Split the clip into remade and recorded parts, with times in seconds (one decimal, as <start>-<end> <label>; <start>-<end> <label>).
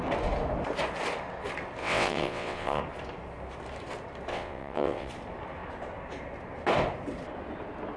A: 0.0-1.8 recorded; 1.8-2.8 remade; 2.8-4.3 recorded; 4.3-5.1 remade; 5.1-8.0 recorded